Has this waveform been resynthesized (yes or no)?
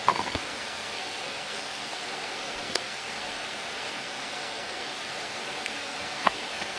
yes